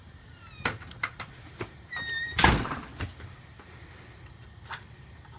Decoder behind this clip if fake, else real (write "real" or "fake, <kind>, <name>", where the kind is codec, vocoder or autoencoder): real